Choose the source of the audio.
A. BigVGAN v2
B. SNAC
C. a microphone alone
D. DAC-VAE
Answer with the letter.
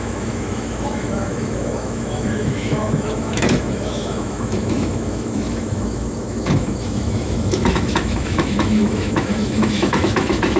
D